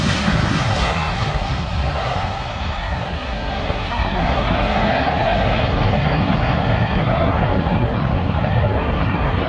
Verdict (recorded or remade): remade